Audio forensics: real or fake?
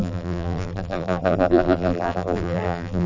fake